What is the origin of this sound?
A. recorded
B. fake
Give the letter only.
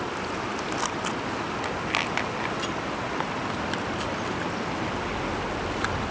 A